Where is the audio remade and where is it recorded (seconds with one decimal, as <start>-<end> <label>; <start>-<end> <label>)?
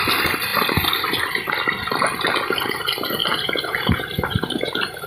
0.0-3.2 recorded; 3.2-5.1 remade